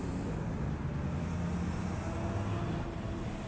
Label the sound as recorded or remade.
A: recorded